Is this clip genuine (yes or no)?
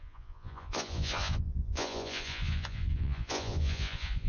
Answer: no